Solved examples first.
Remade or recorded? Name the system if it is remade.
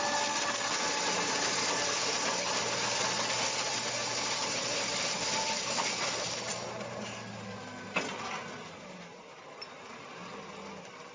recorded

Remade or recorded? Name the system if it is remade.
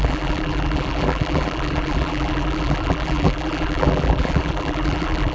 remade, vocoder, BigVGAN v2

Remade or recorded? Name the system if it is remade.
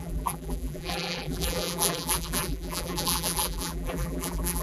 remade, vocoder, BigVGAN v2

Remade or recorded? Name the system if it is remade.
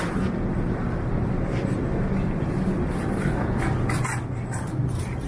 remade, vocoder, BigVGAN v2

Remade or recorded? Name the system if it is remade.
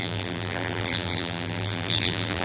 remade, vocoder, BigVGAN v2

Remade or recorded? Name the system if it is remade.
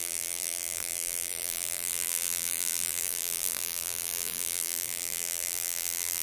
remade, vocoder, BigVGAN v2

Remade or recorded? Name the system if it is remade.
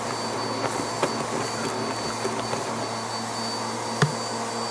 recorded